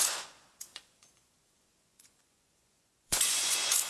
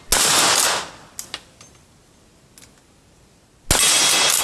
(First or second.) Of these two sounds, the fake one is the first